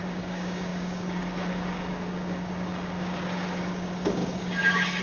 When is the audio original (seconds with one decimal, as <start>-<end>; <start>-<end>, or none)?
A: none